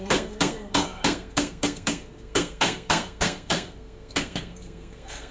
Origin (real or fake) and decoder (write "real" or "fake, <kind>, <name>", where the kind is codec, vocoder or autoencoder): fake, codec, SNAC